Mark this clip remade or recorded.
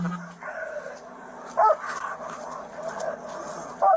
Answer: recorded